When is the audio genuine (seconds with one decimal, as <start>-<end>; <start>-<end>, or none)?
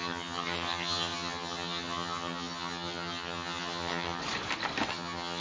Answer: 4.2-4.9